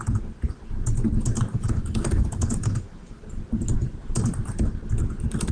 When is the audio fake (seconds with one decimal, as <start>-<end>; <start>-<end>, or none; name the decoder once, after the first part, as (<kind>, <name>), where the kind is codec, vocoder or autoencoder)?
1.5-3.2 (autoencoder, DAC-VAE)